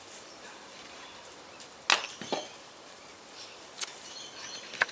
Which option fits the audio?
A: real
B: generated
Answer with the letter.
A